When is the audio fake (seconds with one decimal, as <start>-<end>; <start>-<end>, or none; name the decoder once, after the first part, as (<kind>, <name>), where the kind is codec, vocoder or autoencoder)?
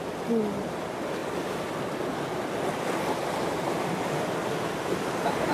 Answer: none